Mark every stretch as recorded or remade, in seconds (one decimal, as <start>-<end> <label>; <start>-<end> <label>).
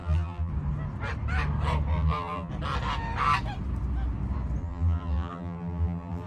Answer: 0.0-0.5 remade; 0.5-1.9 recorded; 1.9-2.5 remade; 2.5-4.6 recorded; 4.6-6.3 remade